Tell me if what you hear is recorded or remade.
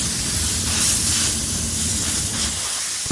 recorded